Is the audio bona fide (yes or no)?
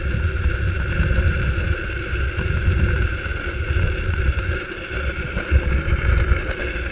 yes